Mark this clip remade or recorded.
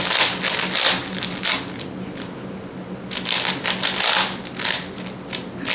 recorded